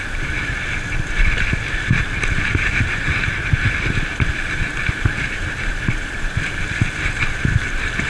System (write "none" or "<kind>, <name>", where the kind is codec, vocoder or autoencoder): vocoder, BigVGAN v2